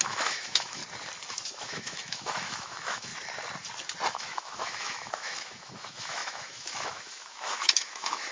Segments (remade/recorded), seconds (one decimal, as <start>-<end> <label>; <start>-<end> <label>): 0.0-0.8 remade; 0.8-1.3 recorded; 1.3-3.1 remade; 3.1-4.1 recorded; 4.1-8.3 remade